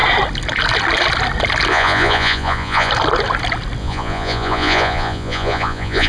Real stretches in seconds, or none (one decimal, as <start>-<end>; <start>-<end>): 0.0-1.7; 2.9-3.8